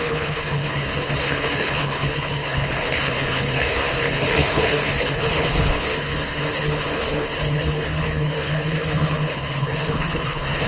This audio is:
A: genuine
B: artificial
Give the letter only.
B